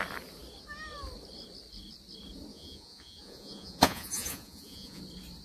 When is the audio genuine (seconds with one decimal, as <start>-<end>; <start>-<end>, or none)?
0.0-2.5; 5.0-5.4